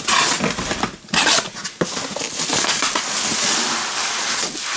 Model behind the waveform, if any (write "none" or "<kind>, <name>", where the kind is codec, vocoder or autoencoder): none